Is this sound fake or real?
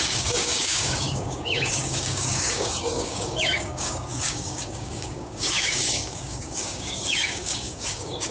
fake